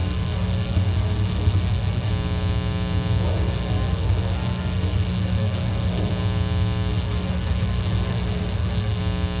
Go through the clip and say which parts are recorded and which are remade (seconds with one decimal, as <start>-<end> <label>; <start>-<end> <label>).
0.0-2.1 remade; 2.1-3.3 recorded; 3.3-6.1 remade; 6.1-6.9 recorded; 6.9-9.0 remade; 9.0-9.4 recorded

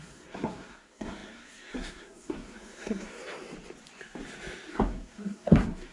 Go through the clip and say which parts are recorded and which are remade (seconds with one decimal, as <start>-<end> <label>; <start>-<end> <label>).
0.0-3.2 remade; 3.2-4.7 recorded; 4.7-5.9 remade

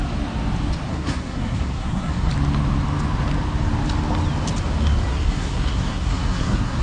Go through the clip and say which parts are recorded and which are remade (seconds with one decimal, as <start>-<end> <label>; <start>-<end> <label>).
0.0-0.9 recorded; 0.9-2.3 remade; 2.3-5.1 recorded; 5.1-6.8 remade

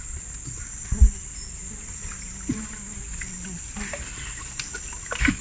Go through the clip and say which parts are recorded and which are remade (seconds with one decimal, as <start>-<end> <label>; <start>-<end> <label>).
0.0-5.4 recorded

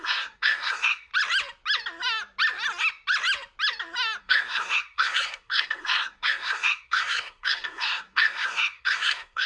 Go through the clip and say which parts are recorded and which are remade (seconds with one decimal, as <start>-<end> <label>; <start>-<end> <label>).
0.0-1.1 remade; 1.1-4.2 recorded; 4.2-9.5 remade

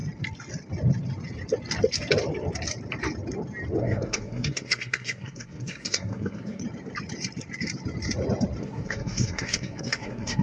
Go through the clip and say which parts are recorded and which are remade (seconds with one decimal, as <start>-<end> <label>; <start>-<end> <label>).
0.0-3.8 recorded; 3.8-6.6 remade; 6.6-8.6 recorded; 8.6-10.4 remade

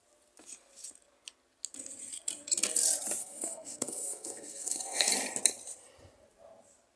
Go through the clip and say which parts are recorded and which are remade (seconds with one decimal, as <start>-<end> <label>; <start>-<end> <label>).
0.0-3.2 recorded; 3.2-5.1 remade; 5.1-7.0 recorded